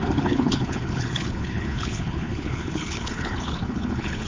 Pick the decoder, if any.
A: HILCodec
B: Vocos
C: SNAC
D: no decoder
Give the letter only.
A